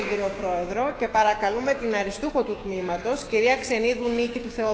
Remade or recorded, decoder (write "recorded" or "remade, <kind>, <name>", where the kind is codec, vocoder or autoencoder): remade, codec, DAC